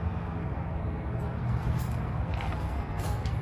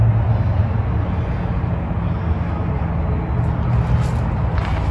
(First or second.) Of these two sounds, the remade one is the first